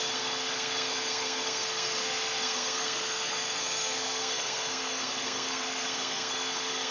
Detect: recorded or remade remade